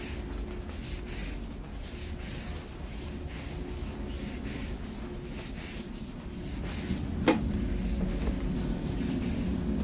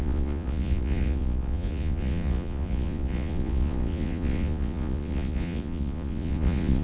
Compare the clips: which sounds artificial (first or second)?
second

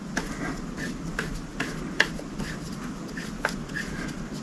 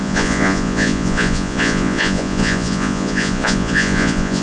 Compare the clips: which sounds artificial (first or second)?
second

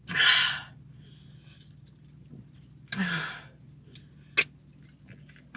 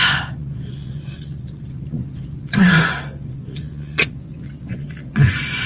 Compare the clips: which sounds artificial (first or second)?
second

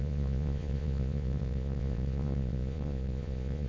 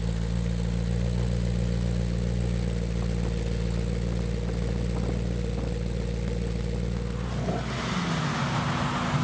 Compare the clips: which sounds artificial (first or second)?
first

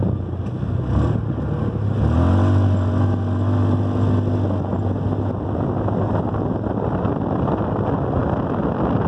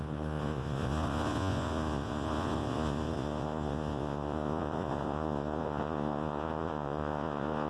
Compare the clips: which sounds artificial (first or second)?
second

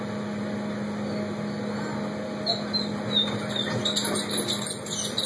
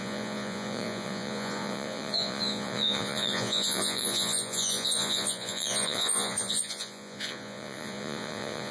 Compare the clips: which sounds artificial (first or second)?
second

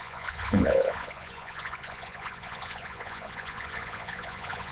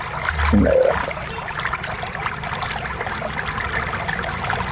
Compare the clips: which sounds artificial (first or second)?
first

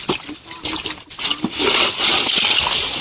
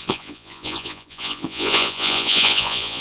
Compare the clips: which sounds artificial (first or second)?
second